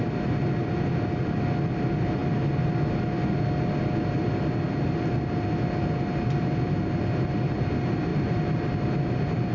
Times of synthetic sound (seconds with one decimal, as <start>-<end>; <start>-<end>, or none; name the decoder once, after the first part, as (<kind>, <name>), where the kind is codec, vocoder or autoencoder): none